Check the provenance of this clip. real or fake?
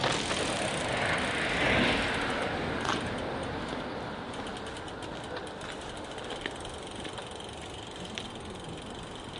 real